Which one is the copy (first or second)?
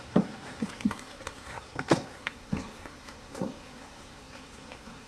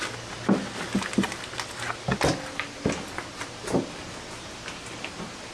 first